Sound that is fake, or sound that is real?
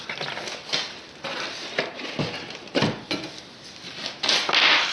real